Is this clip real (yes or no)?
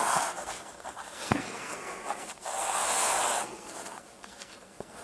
no